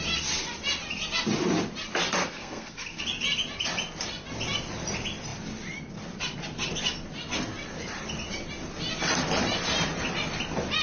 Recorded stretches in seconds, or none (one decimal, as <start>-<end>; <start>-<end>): 0.0-2.2; 3.0-10.8